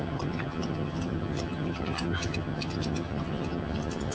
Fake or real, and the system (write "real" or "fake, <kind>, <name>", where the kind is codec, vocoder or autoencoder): fake, vocoder, HiFi-GAN